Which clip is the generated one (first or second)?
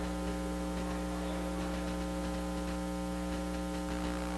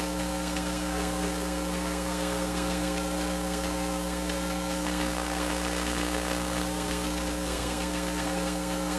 second